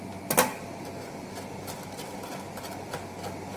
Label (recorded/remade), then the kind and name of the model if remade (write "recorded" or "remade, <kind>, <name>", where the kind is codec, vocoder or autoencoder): recorded